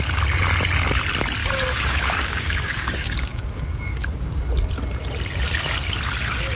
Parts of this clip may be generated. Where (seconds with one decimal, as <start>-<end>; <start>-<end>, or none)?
1.4-4.4